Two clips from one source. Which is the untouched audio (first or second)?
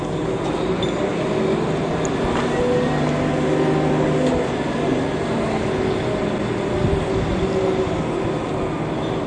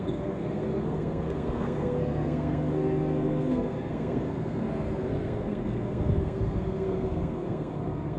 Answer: first